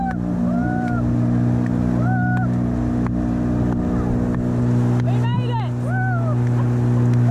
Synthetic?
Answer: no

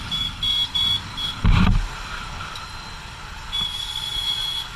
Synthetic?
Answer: no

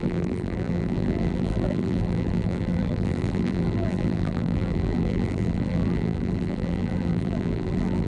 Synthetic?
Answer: yes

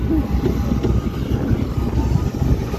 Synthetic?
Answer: no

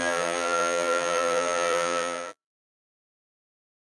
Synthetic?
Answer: yes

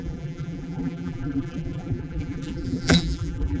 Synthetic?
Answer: yes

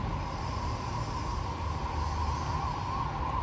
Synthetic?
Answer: no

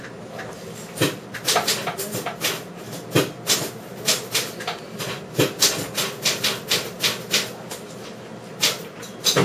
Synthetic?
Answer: no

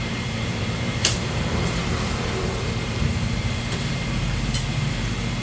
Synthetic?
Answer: yes